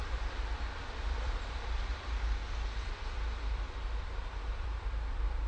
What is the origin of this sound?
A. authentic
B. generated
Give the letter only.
B